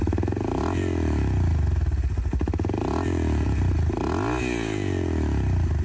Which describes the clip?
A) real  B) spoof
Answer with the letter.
A